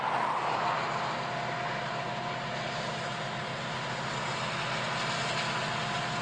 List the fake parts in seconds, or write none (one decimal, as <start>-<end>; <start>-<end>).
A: none